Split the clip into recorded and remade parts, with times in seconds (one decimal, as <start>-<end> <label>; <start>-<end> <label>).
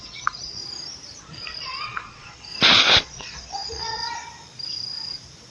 0.0-0.6 remade; 0.6-1.2 recorded; 1.2-2.5 remade; 2.5-3.0 recorded; 3.0-4.0 remade; 4.0-5.5 recorded